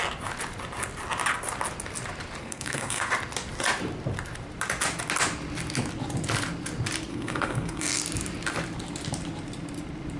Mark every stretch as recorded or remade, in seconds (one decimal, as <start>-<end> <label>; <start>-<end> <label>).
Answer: 0.0-2.4 recorded; 2.4-3.1 remade; 3.1-7.1 recorded; 7.1-8.0 remade; 8.0-10.2 recorded